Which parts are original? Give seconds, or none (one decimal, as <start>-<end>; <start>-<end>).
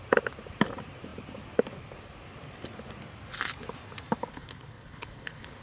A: 0.0-4.3